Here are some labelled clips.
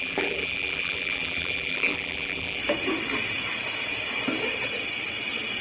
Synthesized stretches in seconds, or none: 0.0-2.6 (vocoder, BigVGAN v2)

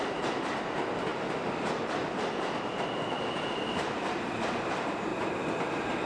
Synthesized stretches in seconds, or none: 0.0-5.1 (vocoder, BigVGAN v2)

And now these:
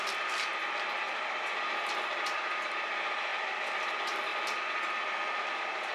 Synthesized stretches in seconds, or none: 3.3-3.9 (vocoder, BigVGAN v2)

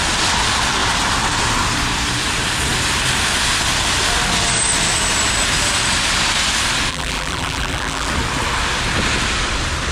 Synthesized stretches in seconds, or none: 6.9-8.1 (vocoder, BigVGAN v2)

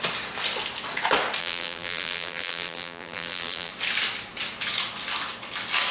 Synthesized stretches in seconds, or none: 1.4-3.7 (vocoder, BigVGAN v2)

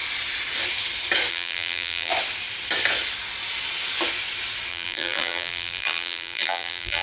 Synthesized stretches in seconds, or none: 1.3-2.1 (vocoder, BigVGAN v2); 4.7-7.0

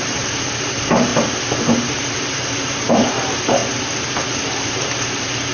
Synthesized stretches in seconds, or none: 0.0-1.1 (vocoder, BigVGAN v2); 1.9-5.5